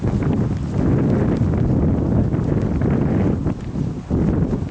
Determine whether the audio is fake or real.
real